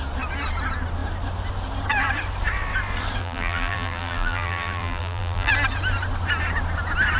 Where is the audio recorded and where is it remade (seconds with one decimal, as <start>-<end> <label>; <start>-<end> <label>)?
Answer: 0.0-3.2 recorded; 3.2-5.5 remade; 5.5-7.2 recorded